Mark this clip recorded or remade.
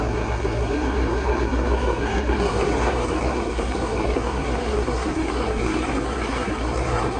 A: remade